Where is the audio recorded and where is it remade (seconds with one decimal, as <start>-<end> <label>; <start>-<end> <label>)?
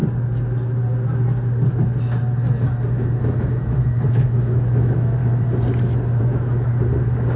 0.0-3.2 recorded; 3.2-5.2 remade; 5.2-6.2 recorded; 6.2-6.7 remade; 6.7-7.4 recorded